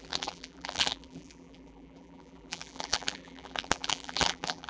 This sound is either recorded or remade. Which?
remade